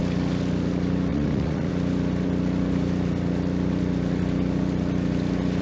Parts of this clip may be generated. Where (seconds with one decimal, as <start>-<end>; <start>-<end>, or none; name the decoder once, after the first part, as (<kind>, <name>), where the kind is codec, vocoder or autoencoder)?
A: 1.1-1.7 (vocoder, Vocos)